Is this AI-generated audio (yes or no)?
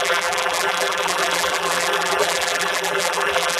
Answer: yes